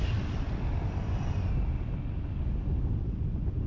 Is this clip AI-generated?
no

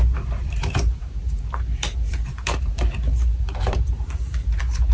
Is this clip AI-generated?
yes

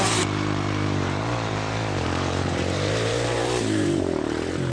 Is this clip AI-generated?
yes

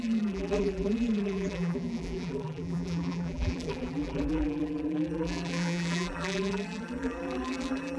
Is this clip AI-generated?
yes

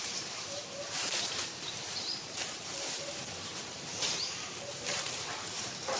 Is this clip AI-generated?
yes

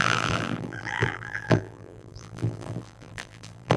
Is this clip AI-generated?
yes